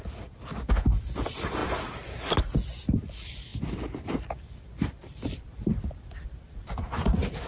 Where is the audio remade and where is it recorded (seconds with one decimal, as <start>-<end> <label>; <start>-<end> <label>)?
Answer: 0.0-1.6 remade; 1.6-2.4 recorded; 2.4-3.5 remade; 3.5-4.2 recorded; 4.2-7.5 remade